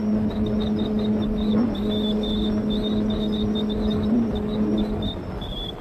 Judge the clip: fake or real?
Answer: real